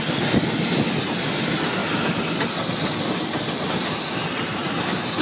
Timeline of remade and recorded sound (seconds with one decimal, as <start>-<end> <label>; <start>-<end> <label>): 0.0-5.2 recorded